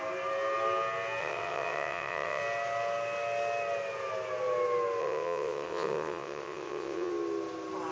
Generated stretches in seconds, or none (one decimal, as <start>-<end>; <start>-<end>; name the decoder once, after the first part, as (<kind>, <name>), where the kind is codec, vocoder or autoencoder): 1.2-2.4 (vocoder, WaveNeXt); 5.0-7.1